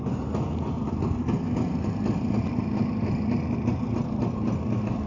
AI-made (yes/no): no